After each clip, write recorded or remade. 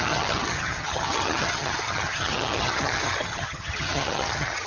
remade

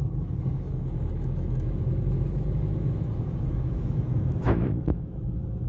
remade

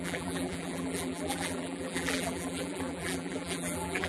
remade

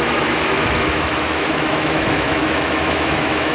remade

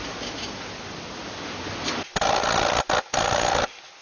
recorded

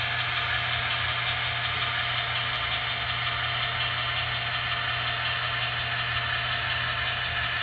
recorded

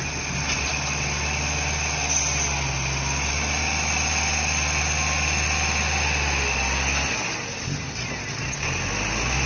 recorded